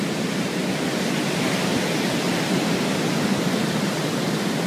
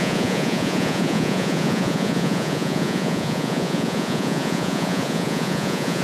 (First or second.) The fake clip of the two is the second